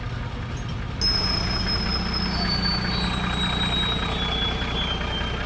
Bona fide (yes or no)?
yes